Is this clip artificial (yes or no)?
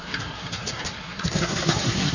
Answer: yes